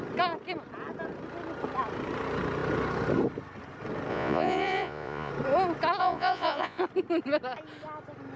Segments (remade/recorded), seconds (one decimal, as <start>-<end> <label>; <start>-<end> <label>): 0.0-4.1 recorded; 4.1-5.3 remade; 5.3-6.0 recorded; 6.0-6.8 remade; 6.8-8.4 recorded